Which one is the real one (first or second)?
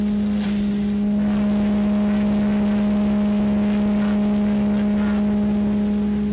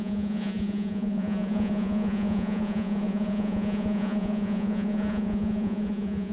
first